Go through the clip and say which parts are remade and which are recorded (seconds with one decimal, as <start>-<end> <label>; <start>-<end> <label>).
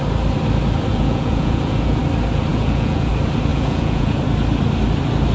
0.0-0.9 recorded; 0.9-2.0 remade; 2.0-2.5 recorded; 2.5-3.1 remade; 3.1-3.5 recorded; 3.5-4.2 remade; 4.2-5.3 recorded